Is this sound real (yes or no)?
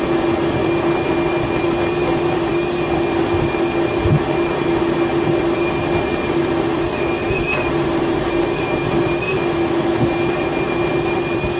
yes